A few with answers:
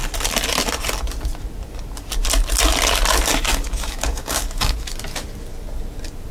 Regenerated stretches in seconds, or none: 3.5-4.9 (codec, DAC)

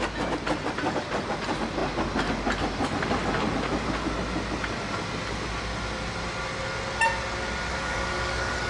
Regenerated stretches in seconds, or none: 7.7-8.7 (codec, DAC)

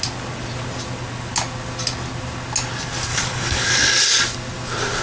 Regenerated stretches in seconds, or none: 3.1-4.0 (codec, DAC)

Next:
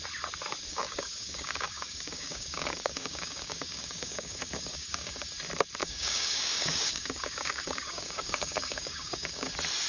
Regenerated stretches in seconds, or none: 0.7-5.3 (codec, DAC); 5.8-9.5

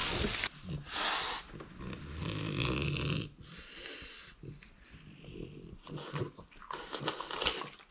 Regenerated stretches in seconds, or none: none

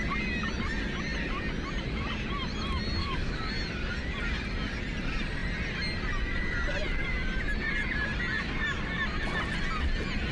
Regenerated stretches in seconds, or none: 3.0-3.5 (codec, DAC)